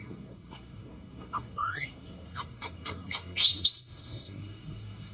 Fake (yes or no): yes